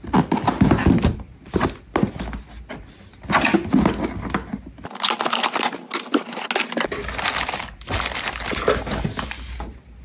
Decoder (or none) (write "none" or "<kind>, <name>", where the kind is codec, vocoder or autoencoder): none